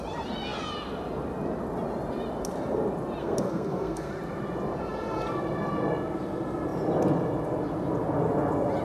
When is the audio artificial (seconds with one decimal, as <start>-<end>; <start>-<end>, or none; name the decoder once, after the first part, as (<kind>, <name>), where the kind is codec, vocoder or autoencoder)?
3.2-4.1 (codec, SNAC)